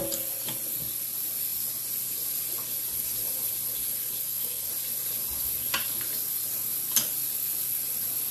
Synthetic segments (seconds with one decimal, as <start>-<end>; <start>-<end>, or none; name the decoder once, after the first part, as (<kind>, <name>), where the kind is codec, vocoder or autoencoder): 4.2-4.7 (codec, SNAC)